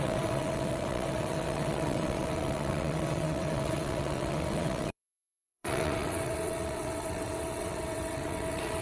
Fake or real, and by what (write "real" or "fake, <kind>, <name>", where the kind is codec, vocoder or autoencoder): fake, vocoder, WaveNeXt